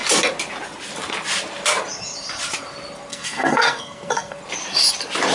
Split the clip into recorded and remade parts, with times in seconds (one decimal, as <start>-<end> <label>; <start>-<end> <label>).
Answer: 0.0-3.1 recorded; 3.1-4.4 remade; 4.4-5.3 recorded